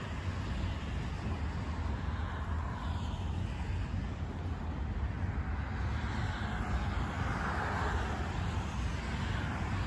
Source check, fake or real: real